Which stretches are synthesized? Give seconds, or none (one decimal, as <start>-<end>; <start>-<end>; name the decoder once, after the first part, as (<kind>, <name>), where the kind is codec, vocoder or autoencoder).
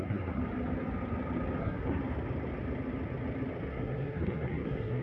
0.0-0.4 (codec, SNAC); 1.6-2.0; 3.7-5.0